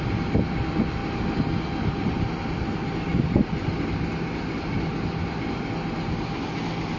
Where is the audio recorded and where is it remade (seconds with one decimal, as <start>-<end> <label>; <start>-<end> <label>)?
0.0-7.0 recorded